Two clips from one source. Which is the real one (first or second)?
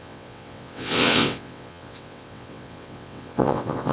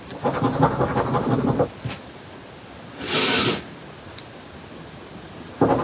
second